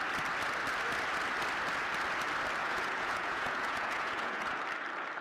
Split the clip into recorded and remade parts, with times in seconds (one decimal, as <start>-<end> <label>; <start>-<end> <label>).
0.0-2.6 recorded; 2.6-4.6 remade; 4.6-5.2 recorded